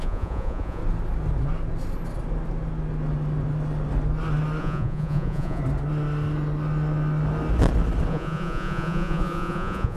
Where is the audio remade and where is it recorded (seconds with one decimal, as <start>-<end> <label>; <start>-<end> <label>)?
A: 0.0-0.8 remade; 0.8-4.6 recorded; 4.6-5.6 remade; 5.6-8.1 recorded; 8.1-10.0 remade